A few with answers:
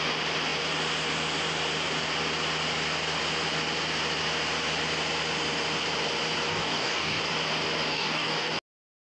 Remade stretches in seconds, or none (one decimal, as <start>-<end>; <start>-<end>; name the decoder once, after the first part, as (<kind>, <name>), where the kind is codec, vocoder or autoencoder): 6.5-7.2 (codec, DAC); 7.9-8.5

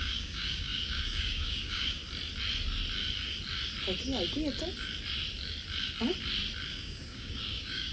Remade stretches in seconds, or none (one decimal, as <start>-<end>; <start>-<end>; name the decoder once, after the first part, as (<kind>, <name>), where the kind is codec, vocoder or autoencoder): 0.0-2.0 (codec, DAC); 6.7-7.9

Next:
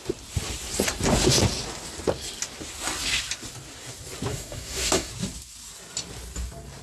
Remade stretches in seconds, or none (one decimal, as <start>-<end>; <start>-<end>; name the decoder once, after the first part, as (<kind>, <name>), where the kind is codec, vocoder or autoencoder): 4.3-5.1 (codec, DAC)

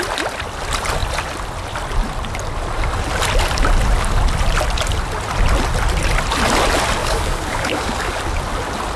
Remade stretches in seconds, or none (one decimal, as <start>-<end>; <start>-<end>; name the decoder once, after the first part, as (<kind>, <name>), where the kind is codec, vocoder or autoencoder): 7.0-8.2 (codec, DAC)

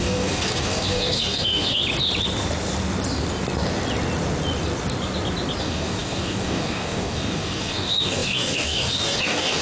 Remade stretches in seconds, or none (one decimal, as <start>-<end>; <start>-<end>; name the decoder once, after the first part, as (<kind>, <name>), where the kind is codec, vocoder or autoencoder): 0.0-1.8 (codec, DAC); 5.6-9.6

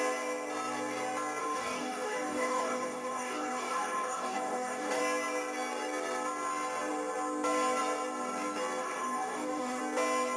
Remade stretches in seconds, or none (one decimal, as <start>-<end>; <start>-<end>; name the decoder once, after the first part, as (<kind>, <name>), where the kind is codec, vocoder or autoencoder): 1.4-5.0 (codec, DAC); 8.8-9.8

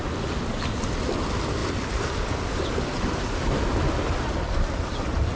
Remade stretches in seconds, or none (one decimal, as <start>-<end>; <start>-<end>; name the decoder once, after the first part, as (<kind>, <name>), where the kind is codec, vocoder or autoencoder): none

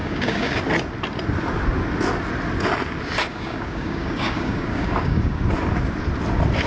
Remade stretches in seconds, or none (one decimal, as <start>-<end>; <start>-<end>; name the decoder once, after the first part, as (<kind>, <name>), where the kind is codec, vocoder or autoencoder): 0.0-0.6 (codec, DAC); 3.3-5.4